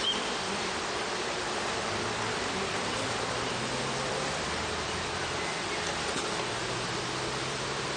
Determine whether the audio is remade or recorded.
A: remade